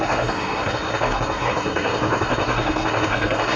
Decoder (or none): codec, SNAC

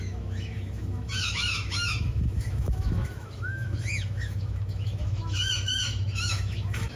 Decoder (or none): autoencoder, DAC-VAE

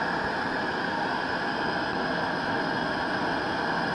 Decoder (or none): none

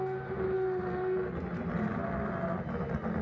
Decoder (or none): none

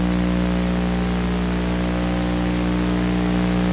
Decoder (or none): none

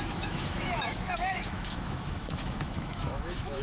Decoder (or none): autoencoder, DAC-VAE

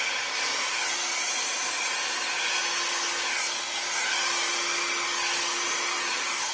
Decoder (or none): none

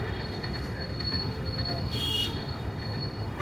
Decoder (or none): autoencoder, DAC-VAE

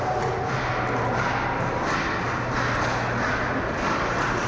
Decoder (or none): none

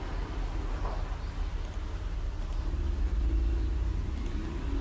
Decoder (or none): none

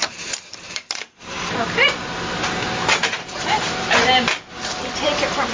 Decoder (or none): vocoder, BigVGAN v2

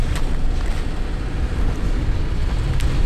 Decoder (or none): none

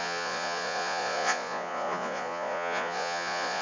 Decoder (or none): vocoder, Vocos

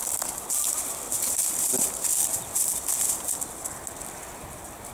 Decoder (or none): none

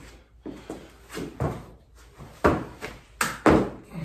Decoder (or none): none